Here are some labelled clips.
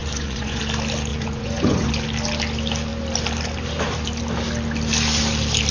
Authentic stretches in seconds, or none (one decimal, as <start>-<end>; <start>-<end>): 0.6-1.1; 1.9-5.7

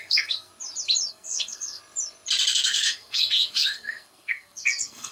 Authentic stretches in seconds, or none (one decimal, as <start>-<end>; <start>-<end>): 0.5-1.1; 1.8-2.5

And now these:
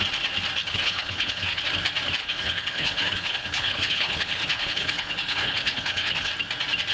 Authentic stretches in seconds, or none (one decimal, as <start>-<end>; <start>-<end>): 0.0-0.6; 1.6-2.2; 6.3-6.9